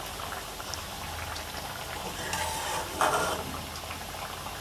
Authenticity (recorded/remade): recorded